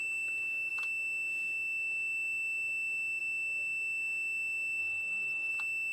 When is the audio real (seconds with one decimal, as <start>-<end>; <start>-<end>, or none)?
0.0-4.8; 5.5-5.9